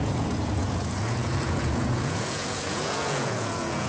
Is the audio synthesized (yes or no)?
yes